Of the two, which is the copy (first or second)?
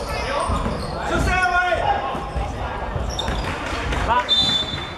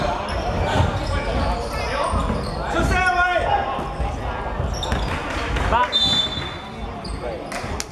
first